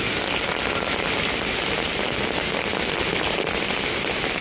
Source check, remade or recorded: recorded